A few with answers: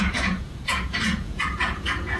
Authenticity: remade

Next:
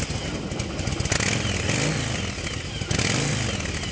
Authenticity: recorded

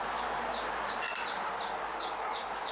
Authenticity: recorded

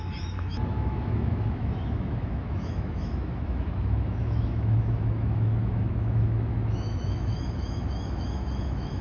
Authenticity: remade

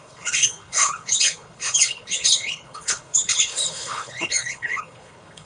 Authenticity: remade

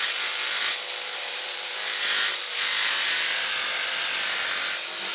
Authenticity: remade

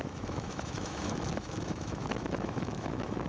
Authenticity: remade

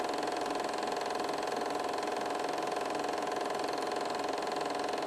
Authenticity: recorded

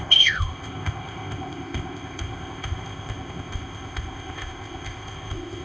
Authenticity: remade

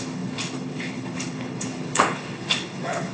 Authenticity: remade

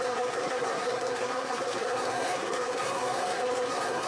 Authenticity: remade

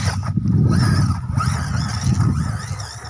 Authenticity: recorded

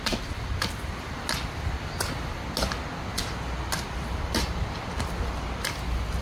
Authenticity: recorded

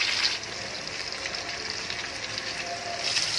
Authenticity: recorded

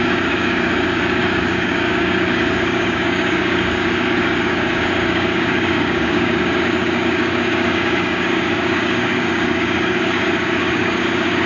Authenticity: remade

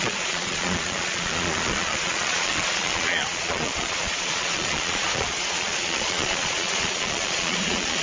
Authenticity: remade